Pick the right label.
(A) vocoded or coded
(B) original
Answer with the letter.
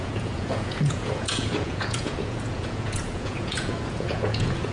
A